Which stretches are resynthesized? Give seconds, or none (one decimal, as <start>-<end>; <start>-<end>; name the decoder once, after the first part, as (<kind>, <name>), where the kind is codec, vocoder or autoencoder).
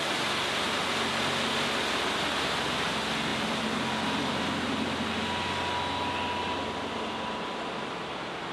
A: none